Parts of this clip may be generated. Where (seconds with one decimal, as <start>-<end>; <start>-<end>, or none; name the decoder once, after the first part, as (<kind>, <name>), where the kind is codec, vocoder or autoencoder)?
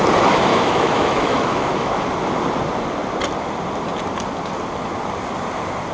0.5-1.9 (autoencoder, DAC-VAE)